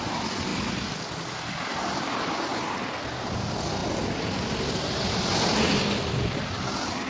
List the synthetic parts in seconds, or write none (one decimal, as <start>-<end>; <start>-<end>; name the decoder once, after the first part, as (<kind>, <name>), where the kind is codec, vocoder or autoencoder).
none